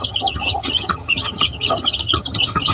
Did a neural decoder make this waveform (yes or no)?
yes